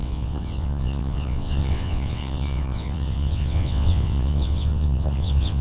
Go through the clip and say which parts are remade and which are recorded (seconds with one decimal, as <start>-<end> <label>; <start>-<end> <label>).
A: 0.0-5.6 remade